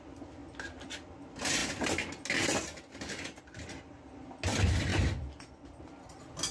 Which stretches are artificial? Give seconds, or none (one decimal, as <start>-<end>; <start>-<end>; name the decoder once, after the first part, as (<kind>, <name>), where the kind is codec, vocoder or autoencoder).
0.4-1.1 (vocoder, BigVGAN v2)